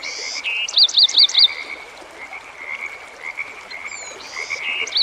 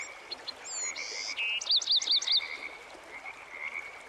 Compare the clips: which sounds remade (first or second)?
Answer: first